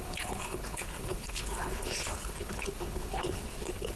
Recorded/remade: remade